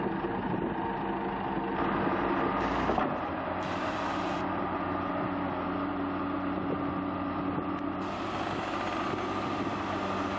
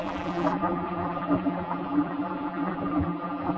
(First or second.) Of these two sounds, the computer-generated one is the second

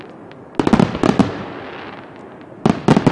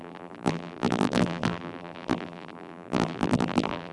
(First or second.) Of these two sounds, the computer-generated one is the second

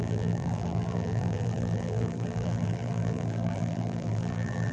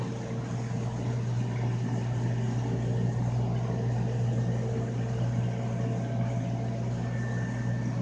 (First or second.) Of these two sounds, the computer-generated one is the first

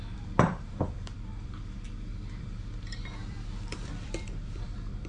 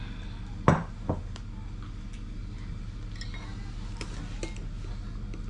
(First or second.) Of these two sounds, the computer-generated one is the first